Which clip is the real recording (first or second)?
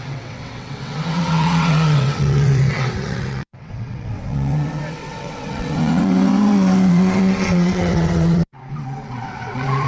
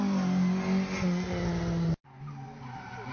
second